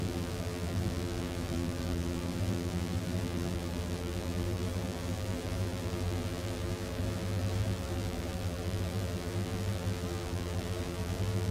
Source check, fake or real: fake